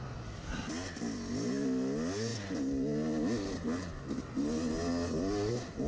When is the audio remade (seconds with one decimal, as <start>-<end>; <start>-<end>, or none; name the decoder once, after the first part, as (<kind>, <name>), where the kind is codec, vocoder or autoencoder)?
none